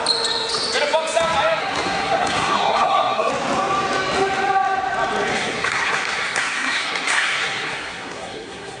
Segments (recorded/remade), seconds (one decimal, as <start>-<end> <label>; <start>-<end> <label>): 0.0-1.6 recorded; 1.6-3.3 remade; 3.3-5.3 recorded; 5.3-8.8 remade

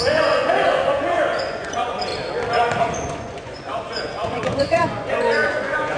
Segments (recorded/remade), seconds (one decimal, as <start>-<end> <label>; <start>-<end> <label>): 0.0-2.1 remade; 2.1-2.8 recorded; 2.8-6.0 remade

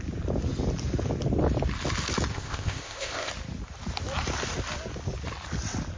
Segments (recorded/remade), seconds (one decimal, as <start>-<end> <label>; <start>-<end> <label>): 0.0-2.3 recorded; 2.3-3.3 remade; 3.3-6.0 recorded

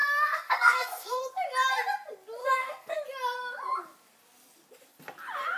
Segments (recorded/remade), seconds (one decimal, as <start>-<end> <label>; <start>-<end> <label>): 0.0-1.2 remade; 1.2-2.4 recorded; 2.4-3.0 remade; 3.0-5.6 recorded